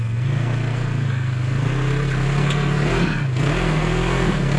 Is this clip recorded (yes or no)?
no